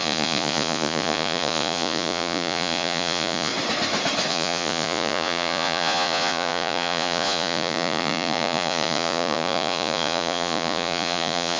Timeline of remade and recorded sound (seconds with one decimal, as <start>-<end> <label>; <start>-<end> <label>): 0.0-3.5 remade; 3.5-4.3 recorded; 4.3-11.6 remade